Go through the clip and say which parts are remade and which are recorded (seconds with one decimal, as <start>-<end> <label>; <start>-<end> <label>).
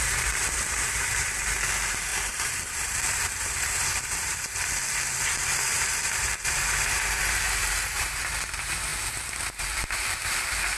0.0-10.8 remade